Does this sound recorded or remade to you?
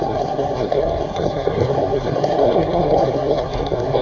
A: remade